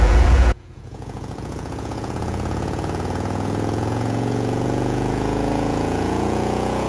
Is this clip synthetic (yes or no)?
yes